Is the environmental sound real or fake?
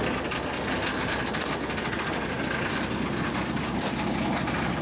real